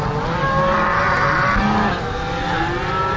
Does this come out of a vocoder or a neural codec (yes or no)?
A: no